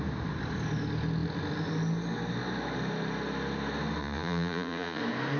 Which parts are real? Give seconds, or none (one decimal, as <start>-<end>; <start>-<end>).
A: 0.0-4.0; 5.0-5.4